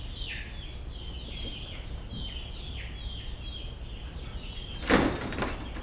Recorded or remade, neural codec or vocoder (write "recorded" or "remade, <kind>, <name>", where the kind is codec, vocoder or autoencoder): recorded